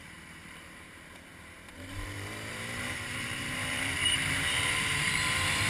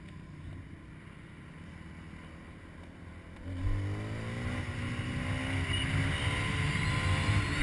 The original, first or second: second